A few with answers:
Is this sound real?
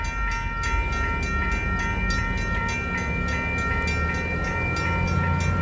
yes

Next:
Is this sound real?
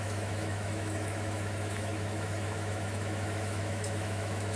no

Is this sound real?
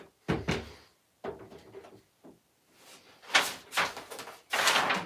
yes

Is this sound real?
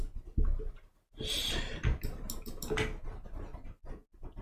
yes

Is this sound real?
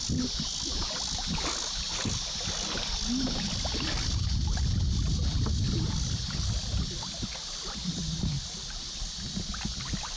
yes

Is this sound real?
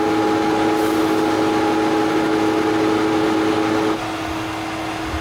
yes